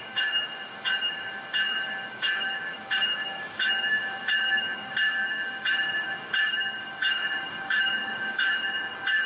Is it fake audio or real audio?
fake